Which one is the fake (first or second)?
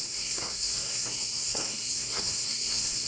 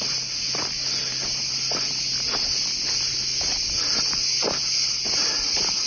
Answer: first